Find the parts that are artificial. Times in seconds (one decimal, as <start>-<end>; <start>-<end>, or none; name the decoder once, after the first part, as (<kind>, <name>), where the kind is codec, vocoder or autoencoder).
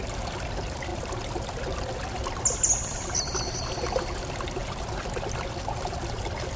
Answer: none